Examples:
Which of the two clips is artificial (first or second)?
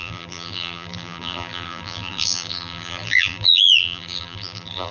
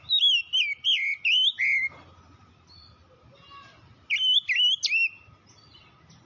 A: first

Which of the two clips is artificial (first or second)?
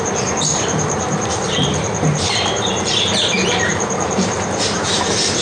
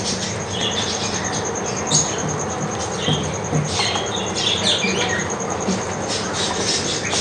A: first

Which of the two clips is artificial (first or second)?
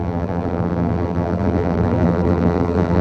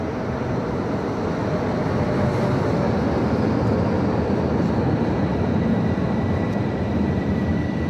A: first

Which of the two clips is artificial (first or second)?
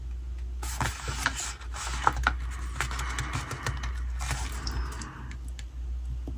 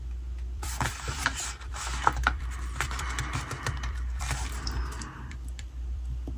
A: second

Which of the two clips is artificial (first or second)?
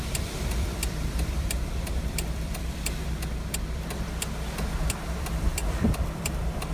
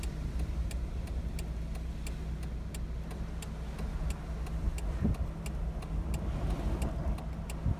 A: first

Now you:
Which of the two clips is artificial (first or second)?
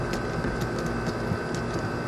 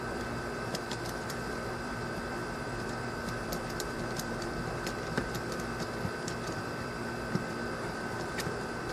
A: second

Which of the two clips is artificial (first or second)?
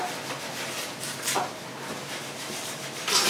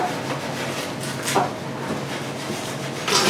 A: first